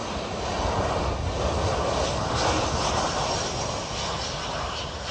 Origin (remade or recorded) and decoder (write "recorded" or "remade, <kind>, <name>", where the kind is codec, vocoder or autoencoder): recorded